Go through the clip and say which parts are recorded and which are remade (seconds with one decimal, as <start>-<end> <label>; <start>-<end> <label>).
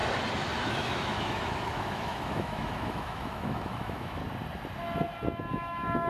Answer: 0.0-0.7 recorded; 0.7-4.2 remade; 4.2-5.5 recorded; 5.5-6.1 remade